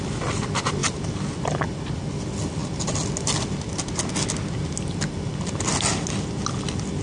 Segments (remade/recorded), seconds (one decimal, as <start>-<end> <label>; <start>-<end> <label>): 0.0-7.0 recorded